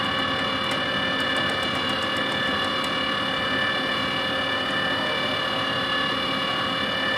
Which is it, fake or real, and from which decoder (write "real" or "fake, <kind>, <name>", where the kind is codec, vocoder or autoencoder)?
real